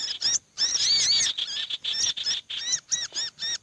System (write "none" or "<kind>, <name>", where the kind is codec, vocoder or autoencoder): none